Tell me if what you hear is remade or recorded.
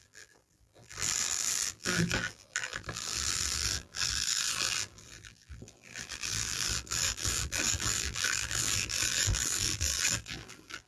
remade